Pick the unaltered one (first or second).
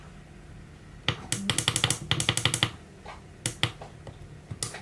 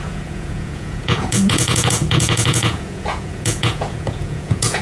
first